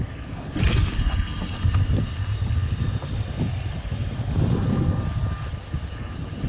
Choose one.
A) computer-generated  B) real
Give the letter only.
B